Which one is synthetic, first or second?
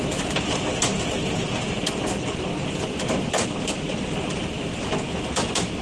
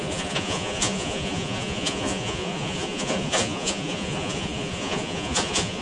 second